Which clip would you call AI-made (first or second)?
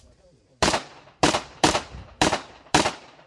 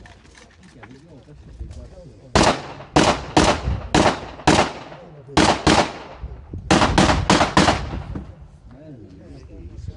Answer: first